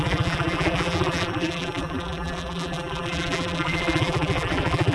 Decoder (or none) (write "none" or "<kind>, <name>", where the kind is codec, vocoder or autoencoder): vocoder, BigVGAN v2